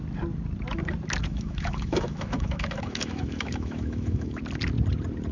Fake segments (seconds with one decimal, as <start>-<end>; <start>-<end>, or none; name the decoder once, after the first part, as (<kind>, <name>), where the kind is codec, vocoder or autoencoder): 1.2-4.4 (autoencoder, DAC-VAE)